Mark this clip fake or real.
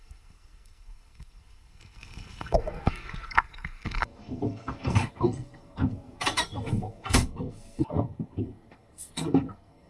fake